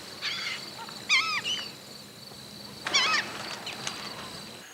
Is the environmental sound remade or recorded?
recorded